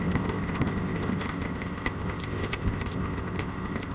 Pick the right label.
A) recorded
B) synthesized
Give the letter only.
B